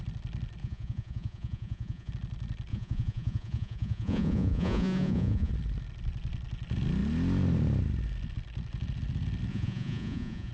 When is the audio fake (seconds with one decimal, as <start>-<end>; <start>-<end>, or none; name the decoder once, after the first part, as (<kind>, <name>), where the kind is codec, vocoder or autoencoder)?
0.6-2.1 (vocoder, Vocos); 2.7-5.5; 9.5-10.5